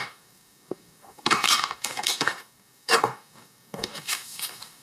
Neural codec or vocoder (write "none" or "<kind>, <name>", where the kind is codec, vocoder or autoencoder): codec, DAC